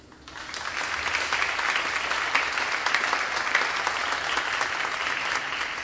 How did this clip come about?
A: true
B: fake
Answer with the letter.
A